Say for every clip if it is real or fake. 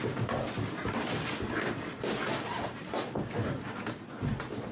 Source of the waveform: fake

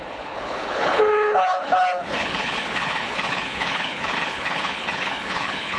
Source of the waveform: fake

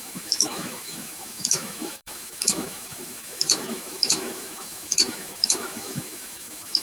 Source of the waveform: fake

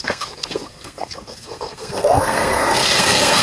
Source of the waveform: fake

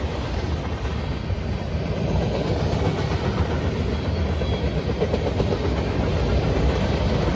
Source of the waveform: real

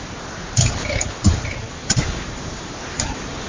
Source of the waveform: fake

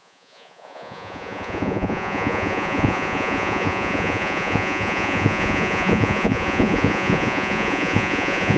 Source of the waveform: fake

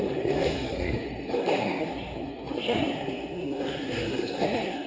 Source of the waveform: fake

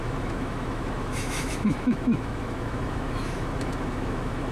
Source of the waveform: fake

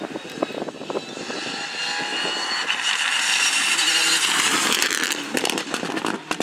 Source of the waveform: real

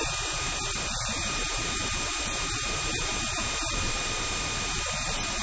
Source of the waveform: fake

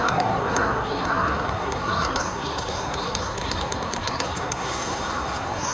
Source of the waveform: fake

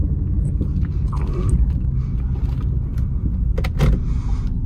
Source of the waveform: real